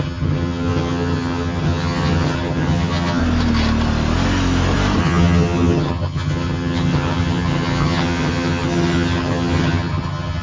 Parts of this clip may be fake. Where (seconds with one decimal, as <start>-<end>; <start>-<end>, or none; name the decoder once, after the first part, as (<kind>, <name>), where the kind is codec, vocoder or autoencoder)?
0.0-3.2 (vocoder, HiFi-GAN); 5.0-10.4